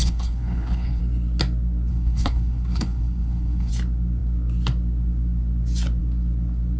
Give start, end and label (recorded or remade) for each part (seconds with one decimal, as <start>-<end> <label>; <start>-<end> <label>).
0.0-1.0 remade; 1.0-1.9 recorded; 1.9-3.7 remade; 3.7-6.8 recorded